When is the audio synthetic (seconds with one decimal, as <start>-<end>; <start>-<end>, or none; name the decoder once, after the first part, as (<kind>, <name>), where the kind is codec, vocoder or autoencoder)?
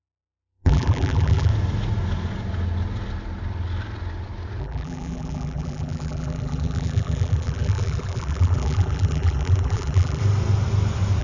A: 0.0-1.5 (vocoder, BigVGAN v2); 4.6-10.2